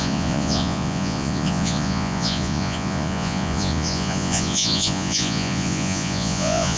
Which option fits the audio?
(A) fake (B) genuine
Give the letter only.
A